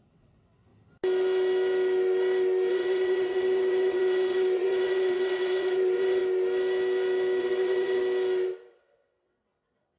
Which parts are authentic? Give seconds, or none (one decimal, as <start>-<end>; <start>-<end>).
0.7-2.7; 6.2-7.4; 8.0-8.7